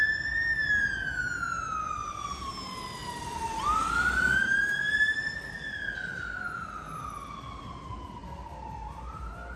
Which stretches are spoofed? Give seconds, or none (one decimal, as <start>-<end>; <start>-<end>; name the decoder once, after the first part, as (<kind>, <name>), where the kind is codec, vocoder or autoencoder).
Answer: 2.0-2.5 (vocoder, BigVGAN v2); 3.0-5.4; 8.2-9.2